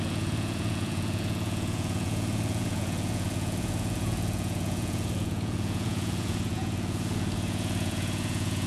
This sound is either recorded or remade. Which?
remade